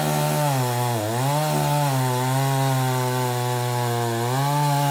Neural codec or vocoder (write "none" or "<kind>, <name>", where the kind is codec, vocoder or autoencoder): none